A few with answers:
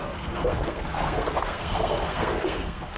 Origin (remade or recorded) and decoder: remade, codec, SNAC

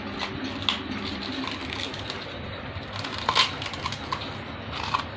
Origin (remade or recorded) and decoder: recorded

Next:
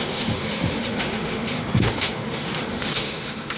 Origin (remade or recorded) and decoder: remade, autoencoder, DAC-VAE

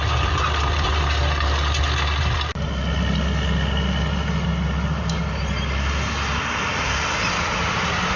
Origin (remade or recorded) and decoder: recorded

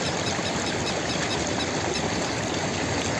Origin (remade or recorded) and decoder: recorded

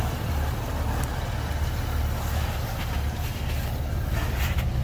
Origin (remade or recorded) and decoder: recorded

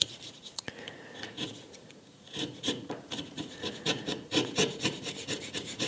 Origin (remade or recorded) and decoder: remade, vocoder, Vocos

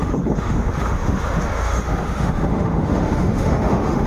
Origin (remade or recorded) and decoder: remade, autoencoder, DAC-VAE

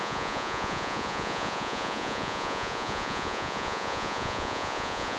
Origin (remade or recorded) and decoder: remade, vocoder, Vocos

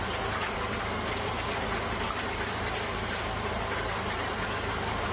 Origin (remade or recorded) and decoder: recorded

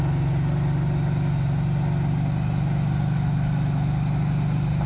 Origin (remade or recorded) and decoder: recorded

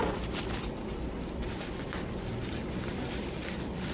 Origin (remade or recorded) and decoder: remade, vocoder, BigVGAN v2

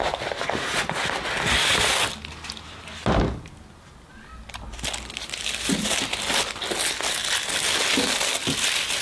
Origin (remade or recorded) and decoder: recorded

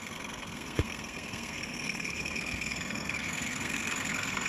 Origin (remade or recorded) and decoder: remade, codec, SNAC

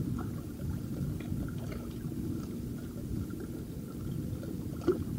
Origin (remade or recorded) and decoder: recorded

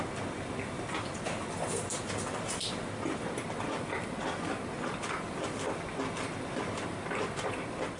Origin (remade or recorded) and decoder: remade, vocoder, BigVGAN v2